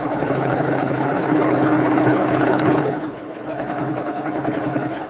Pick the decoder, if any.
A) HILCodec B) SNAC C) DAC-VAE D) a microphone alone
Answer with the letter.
A